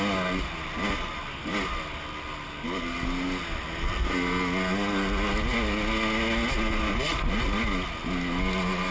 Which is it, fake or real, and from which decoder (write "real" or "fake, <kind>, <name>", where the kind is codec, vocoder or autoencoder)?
real